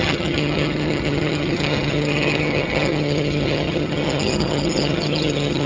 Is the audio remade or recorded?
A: remade